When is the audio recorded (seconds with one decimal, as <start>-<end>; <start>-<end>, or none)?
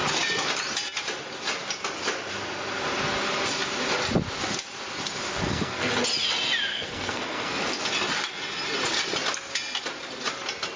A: 0.0-5.3; 5.9-6.7; 7.8-10.8